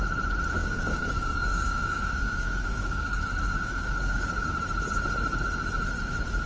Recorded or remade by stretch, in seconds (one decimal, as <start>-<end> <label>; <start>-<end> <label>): 0.0-0.6 recorded; 0.6-4.5 remade; 4.5-6.5 recorded

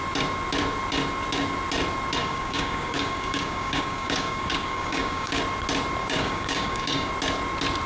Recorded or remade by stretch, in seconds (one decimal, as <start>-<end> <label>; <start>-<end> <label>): 0.0-2.2 recorded; 2.2-5.4 remade; 5.4-6.0 recorded; 6.0-7.1 remade; 7.1-7.9 recorded

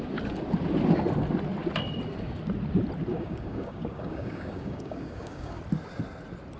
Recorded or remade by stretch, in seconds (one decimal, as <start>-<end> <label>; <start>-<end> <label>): 0.0-3.1 recorded; 3.1-5.6 remade; 5.6-6.6 recorded

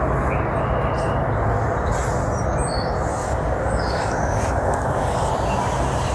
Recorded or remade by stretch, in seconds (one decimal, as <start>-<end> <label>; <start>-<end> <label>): 0.0-3.1 recorded; 3.1-5.3 remade; 5.3-6.1 recorded